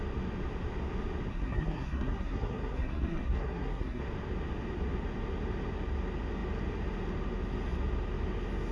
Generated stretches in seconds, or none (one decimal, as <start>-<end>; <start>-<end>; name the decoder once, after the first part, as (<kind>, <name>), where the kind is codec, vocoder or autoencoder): 1.3-4.0 (codec, SNAC)